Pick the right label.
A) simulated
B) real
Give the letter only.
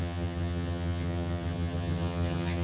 A